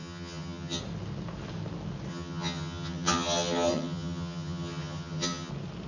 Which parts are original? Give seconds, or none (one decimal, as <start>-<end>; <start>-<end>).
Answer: 0.8-2.1; 5.5-5.9